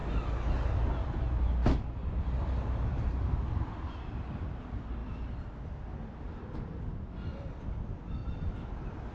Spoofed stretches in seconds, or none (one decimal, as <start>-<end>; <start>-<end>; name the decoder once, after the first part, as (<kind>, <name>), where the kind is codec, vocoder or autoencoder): 0.0-0.5 (vocoder, BigVGAN v2); 1.6-3.1; 8.2-9.1